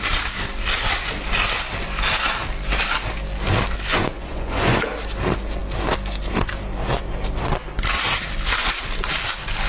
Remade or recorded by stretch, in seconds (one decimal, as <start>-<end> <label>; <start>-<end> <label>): 0.0-3.9 recorded; 3.9-4.8 remade; 4.8-9.7 recorded